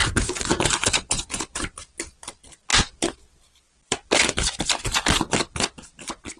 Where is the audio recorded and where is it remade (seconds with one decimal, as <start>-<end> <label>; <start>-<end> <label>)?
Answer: 0.0-1.4 remade; 1.4-6.4 recorded

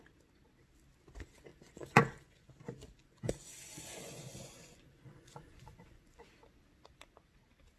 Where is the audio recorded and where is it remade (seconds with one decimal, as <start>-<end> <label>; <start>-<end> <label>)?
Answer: 0.0-1.5 recorded; 1.5-2.5 remade; 2.5-3.0 recorded; 3.0-6.3 remade; 6.3-7.8 recorded

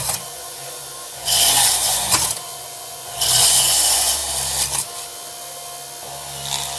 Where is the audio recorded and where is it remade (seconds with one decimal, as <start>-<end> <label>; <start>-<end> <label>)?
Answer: 0.0-4.2 remade; 4.2-6.8 recorded

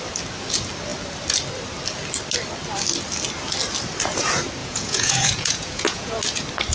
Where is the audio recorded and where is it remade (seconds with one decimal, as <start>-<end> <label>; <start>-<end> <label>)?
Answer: 0.0-4.6 recorded; 4.6-6.2 remade; 6.2-6.7 recorded

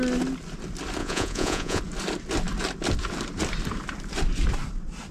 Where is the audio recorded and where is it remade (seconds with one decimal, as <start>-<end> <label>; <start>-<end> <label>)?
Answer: 0.0-1.0 recorded; 1.0-1.8 remade; 1.8-5.1 recorded

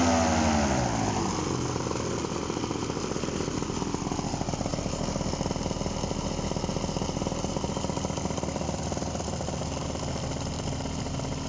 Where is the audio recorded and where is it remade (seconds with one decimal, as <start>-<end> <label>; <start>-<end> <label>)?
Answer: 0.0-11.5 recorded

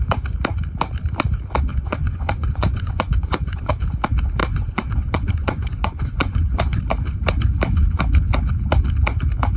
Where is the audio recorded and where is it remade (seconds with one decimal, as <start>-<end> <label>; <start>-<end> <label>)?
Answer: 0.0-1.7 recorded; 1.7-3.7 remade; 3.7-4.4 recorded; 4.4-6.8 remade; 6.8-9.6 recorded